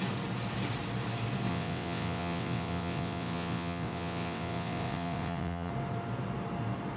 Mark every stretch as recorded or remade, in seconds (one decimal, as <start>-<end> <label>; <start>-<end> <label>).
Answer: 0.0-1.5 recorded; 1.5-5.7 remade; 5.7-7.0 recorded